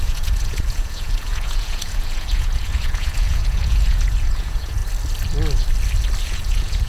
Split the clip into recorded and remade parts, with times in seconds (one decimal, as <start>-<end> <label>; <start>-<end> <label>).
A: 0.0-4.8 remade; 4.8-6.2 recorded; 6.2-6.9 remade